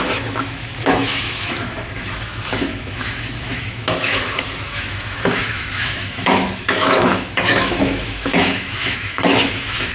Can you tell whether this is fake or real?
fake